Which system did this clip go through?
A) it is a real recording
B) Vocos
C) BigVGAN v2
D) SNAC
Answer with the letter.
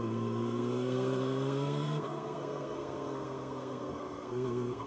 D